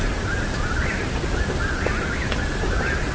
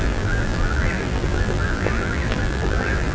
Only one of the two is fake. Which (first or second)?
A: second